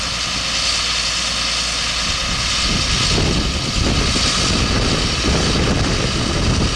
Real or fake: real